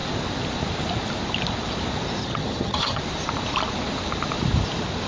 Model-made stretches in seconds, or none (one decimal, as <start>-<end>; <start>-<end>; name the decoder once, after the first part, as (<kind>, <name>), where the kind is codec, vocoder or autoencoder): 2.2-3.0 (vocoder, HiFi-GAN)